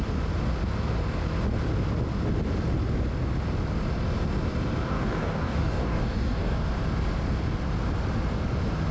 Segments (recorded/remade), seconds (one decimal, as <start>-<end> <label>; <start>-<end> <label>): 0.0-4.9 recorded; 4.9-6.7 remade; 6.7-8.9 recorded